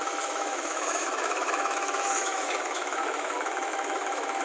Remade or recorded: remade